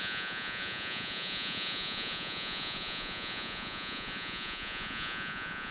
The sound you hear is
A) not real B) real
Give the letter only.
A